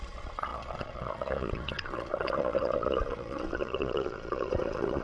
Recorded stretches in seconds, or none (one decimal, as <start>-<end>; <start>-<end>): none